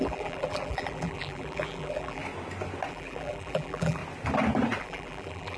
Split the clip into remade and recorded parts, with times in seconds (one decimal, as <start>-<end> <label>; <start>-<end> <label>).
0.0-2.2 remade; 2.2-2.9 recorded; 2.9-4.0 remade; 4.0-4.8 recorded; 4.8-5.6 remade